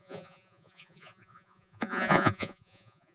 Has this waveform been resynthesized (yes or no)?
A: yes